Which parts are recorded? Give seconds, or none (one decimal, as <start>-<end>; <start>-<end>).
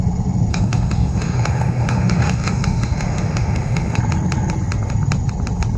0.0-0.5; 4.0-5.8